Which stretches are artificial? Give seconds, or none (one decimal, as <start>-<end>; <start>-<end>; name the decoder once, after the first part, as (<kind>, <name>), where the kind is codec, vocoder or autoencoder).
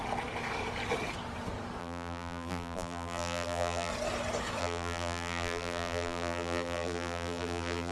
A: 1.8-3.9 (vocoder, BigVGAN v2); 4.6-7.9